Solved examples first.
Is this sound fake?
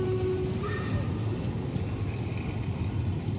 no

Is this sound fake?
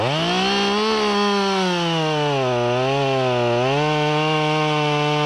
no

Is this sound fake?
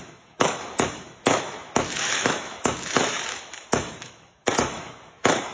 yes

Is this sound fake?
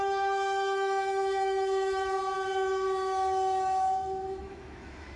yes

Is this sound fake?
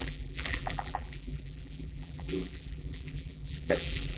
yes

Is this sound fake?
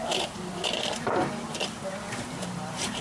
yes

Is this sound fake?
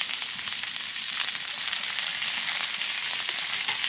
no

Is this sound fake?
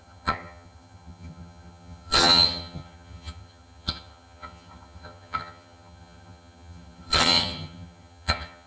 yes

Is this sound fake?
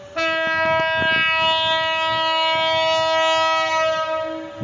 no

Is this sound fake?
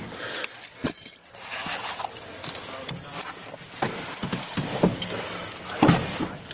no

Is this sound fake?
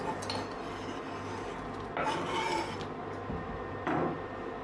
no